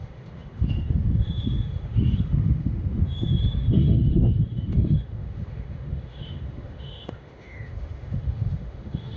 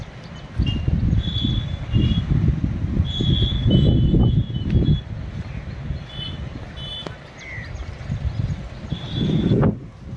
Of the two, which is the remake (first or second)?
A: first